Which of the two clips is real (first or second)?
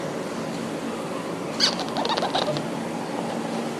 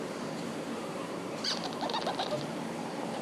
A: first